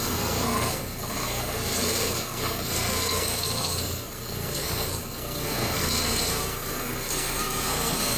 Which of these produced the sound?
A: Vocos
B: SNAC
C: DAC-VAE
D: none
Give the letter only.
B